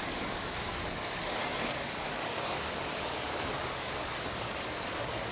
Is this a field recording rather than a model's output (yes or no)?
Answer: no